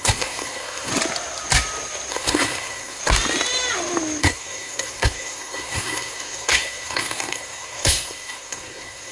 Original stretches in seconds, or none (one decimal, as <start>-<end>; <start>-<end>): 0.9-2.1; 3.0-4.2